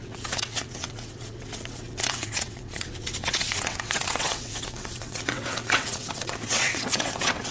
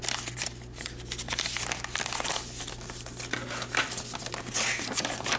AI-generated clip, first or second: first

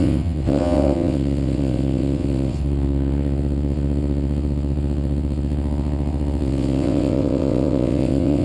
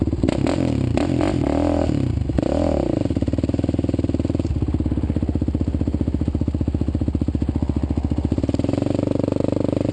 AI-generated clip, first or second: first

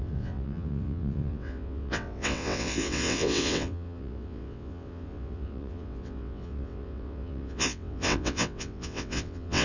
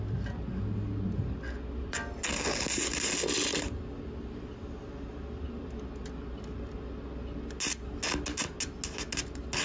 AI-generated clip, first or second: first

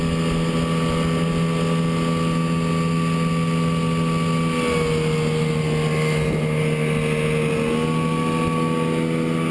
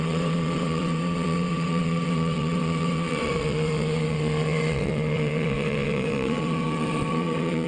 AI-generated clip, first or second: second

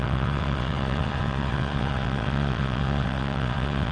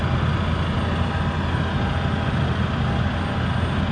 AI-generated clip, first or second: first